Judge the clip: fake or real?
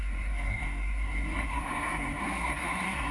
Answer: fake